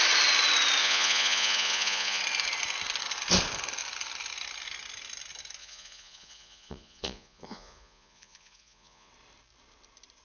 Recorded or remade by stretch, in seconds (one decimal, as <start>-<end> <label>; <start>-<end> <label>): 0.0-0.8 recorded; 0.8-2.2 remade; 2.2-5.6 recorded; 5.6-9.1 remade; 9.1-10.2 recorded